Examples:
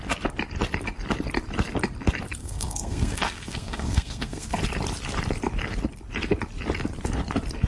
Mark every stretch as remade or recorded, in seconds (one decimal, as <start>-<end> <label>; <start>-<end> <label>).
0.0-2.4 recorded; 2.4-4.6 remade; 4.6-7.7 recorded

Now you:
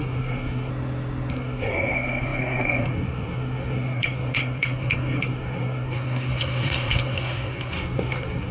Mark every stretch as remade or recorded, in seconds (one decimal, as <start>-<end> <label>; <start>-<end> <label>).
0.0-0.7 remade; 0.7-1.3 recorded; 1.3-8.5 remade

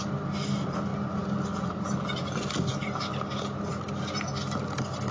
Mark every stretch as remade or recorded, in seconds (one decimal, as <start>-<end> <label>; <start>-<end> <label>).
0.0-5.1 recorded

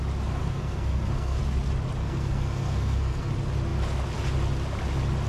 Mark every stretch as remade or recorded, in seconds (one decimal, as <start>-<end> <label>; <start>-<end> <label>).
0.0-0.4 recorded; 0.4-1.4 remade; 1.4-2.0 recorded; 2.0-3.3 remade; 3.3-5.3 recorded

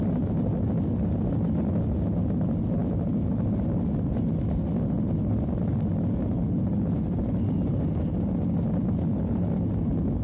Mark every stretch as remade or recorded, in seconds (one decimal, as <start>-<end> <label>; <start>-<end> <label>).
0.0-10.2 recorded

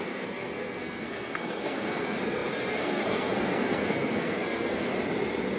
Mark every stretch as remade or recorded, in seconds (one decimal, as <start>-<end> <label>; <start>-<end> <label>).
0.0-4.9 remade; 4.9-5.6 recorded